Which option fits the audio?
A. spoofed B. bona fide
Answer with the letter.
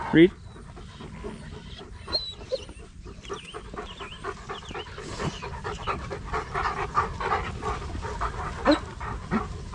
B